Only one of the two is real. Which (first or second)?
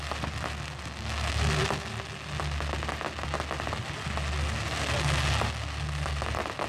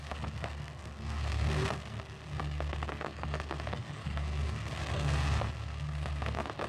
first